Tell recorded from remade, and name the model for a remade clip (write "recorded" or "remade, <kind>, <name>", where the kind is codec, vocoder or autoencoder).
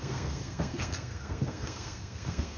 remade, codec, SNAC